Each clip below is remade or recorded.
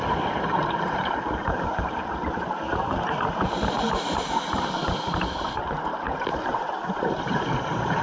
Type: remade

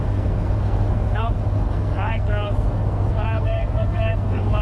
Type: remade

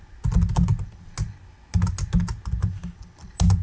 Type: recorded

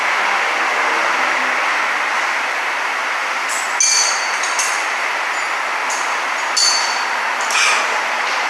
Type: recorded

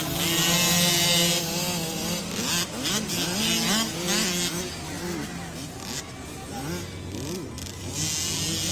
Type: recorded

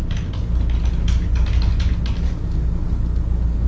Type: recorded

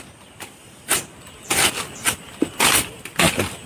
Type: recorded